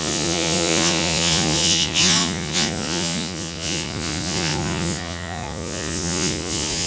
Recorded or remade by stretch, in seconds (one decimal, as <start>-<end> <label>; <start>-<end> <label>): 0.0-6.9 remade